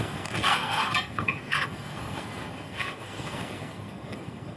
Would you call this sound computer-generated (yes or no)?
yes